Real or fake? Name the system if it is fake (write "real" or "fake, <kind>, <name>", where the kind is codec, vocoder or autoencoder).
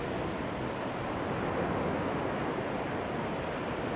real